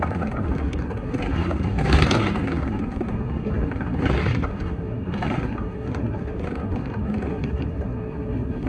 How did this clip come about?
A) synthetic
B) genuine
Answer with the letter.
A